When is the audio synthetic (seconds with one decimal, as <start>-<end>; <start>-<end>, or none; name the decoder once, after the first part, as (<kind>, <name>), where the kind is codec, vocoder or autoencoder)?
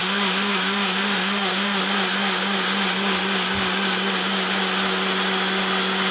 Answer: 0.0-1.8 (autoencoder, DAC-VAE)